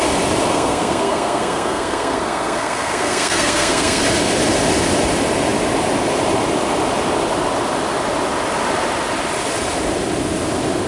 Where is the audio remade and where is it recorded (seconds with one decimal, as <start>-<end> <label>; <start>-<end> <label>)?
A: 0.0-0.5 recorded; 0.5-4.0 remade; 4.0-10.9 recorded